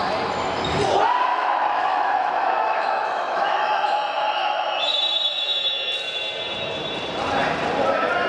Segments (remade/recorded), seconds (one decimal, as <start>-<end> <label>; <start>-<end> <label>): 0.0-1.3 recorded; 1.3-5.0 remade; 5.0-8.3 recorded